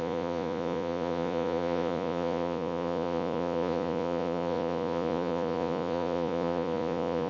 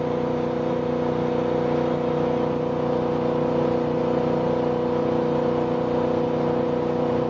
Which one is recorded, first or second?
second